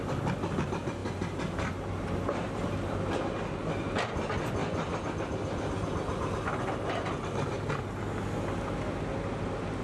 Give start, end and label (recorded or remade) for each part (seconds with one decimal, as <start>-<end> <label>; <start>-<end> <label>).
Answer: 0.0-9.8 recorded